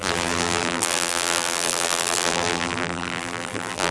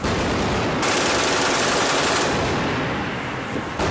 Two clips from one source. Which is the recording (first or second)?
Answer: second